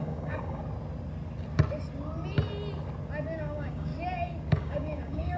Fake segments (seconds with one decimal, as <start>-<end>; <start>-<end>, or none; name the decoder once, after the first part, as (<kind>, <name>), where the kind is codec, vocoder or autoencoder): 0.0-0.6 (codec, DAC); 3.4-3.9; 4.5-5.4